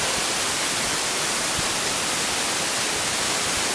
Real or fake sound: fake